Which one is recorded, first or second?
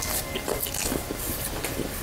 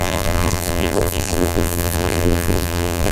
first